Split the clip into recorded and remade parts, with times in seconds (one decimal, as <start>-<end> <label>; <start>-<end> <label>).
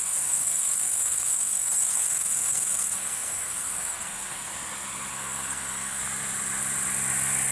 0.0-4.5 remade; 4.5-5.1 recorded; 5.1-6.0 remade; 6.0-7.5 recorded